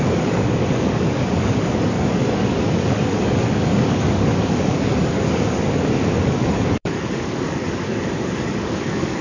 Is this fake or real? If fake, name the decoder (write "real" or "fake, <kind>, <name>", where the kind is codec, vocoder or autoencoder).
fake, codec, DAC